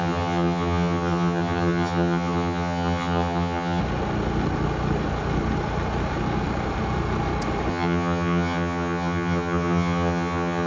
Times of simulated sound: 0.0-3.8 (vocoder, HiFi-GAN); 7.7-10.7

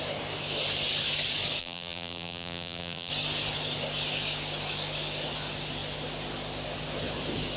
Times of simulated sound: 1.6-3.1 (vocoder, BigVGAN v2)

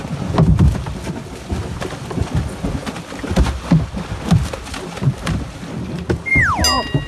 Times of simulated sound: none